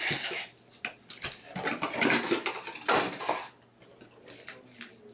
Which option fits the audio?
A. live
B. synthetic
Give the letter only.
A